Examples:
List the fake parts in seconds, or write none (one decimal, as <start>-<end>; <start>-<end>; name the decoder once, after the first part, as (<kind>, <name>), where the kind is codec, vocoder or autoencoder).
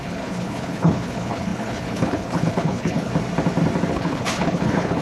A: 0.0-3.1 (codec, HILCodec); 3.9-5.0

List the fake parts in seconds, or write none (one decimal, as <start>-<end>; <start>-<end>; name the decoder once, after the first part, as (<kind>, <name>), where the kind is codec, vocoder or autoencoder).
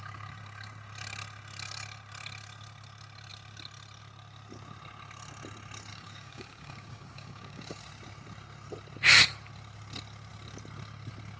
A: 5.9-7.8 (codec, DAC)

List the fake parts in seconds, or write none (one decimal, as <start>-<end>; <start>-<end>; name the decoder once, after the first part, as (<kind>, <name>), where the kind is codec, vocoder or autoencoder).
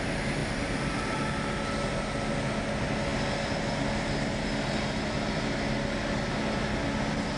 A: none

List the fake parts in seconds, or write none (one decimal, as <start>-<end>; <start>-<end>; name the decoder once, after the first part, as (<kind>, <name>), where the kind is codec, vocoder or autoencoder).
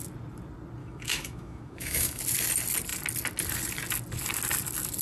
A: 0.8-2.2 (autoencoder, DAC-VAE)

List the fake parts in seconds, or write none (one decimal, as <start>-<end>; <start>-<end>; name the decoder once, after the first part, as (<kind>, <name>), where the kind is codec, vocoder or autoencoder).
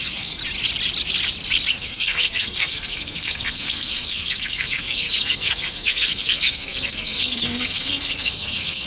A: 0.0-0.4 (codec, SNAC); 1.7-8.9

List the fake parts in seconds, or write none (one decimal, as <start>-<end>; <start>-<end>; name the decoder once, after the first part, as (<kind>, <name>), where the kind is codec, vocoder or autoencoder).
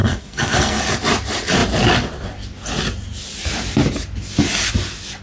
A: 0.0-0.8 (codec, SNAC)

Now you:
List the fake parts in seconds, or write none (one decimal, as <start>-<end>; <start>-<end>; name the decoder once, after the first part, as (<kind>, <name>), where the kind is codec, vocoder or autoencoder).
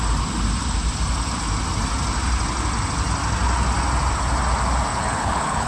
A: 4.9-5.7 (codec, HILCodec)